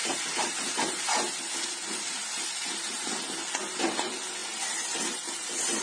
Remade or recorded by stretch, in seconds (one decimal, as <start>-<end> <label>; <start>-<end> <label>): 0.0-5.8 recorded